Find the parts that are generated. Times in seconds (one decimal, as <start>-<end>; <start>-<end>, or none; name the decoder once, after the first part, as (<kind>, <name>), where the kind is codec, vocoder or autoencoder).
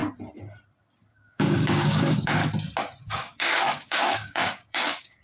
1.1-2.4 (codec, DAC); 3.0-5.2